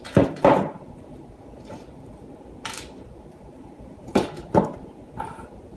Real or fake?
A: fake